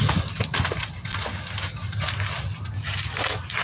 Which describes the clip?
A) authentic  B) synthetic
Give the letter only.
A